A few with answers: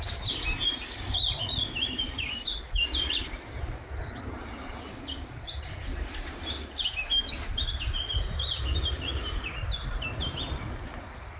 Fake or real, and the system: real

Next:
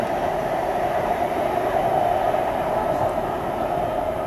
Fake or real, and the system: fake, vocoder, BigVGAN v2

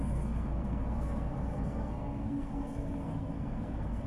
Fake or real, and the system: fake, codec, SNAC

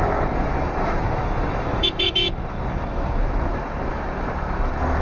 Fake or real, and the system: fake, autoencoder, DAC-VAE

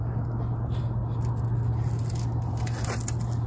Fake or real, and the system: real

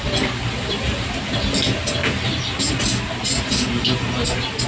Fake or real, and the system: real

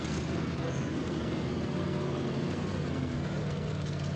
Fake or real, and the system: fake, codec, SNAC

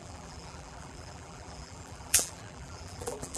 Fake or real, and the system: fake, vocoder, BigVGAN v2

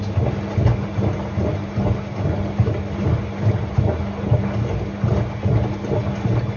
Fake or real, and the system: real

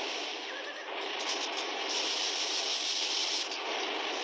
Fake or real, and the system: real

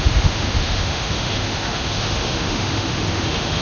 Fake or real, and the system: fake, autoencoder, DAC-VAE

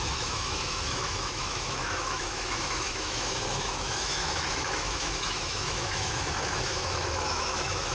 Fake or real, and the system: fake, autoencoder, DAC-VAE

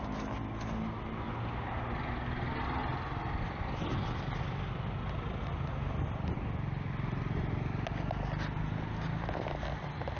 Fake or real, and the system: real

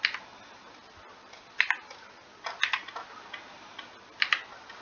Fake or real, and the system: real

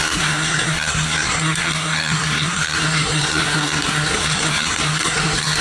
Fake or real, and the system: fake, codec, SNAC